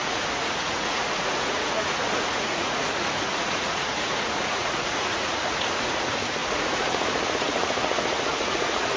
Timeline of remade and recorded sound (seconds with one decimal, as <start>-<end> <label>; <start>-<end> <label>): 0.0-9.0 remade